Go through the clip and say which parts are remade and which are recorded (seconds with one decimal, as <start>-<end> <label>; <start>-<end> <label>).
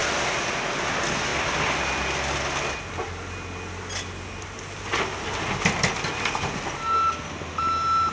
0.0-8.1 recorded